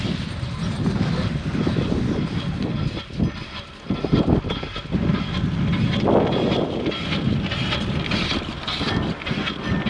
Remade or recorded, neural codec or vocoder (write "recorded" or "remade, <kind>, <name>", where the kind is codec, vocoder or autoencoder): recorded